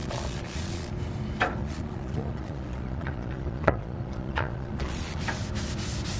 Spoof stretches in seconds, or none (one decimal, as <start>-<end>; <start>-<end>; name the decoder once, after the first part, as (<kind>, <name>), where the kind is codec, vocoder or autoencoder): 0.0-0.9 (vocoder, Vocos); 1.6-5.2